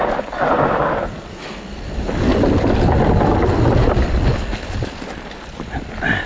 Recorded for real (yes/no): yes